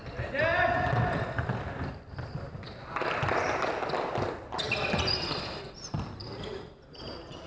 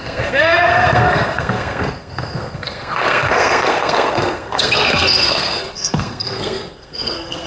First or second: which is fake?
second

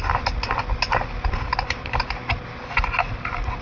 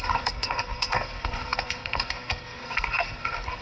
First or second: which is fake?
second